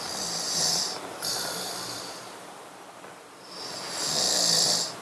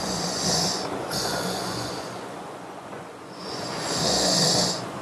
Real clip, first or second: first